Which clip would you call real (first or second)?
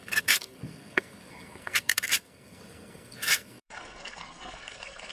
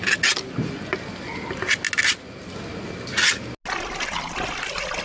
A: second